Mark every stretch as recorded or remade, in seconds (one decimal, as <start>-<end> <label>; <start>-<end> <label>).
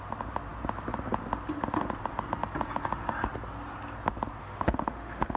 0.0-4.4 recorded; 4.4-5.4 remade